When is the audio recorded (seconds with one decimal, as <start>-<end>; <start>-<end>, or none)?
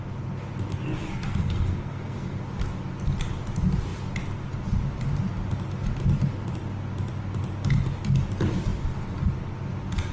0.0-0.7; 2.4-10.1